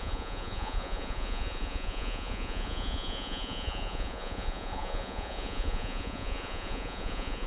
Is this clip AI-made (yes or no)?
yes